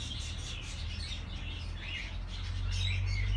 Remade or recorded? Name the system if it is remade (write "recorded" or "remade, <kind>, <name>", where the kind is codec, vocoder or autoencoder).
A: recorded